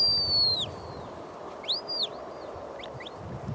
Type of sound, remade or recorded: recorded